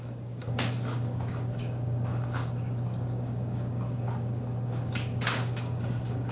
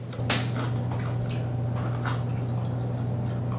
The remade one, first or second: first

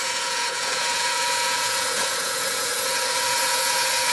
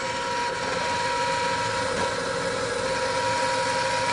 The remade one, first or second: first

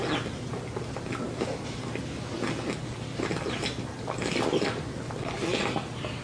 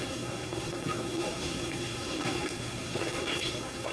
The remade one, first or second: second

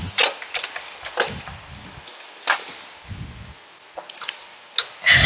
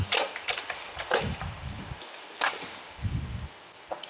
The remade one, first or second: second